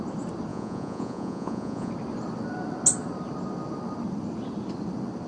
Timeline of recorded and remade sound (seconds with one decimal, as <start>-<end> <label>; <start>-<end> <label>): 0.0-0.5 recorded; 0.5-1.9 remade; 1.9-5.3 recorded